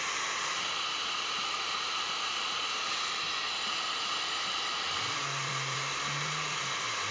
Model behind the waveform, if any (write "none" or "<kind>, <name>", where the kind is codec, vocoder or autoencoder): vocoder, BigVGAN v2